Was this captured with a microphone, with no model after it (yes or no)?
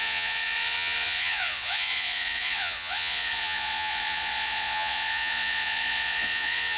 no